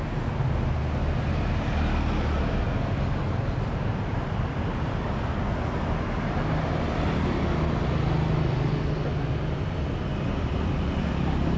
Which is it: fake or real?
real